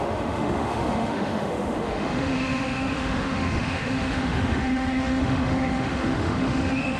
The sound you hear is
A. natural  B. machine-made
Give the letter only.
B